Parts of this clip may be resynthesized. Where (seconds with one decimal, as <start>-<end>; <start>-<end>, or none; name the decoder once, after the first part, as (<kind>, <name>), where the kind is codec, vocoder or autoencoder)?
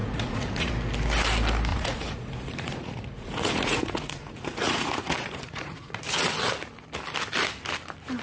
0.0-0.7 (vocoder, Vocos); 1.7-6.0